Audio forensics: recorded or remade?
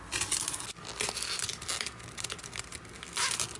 recorded